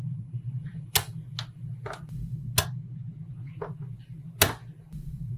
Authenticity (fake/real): real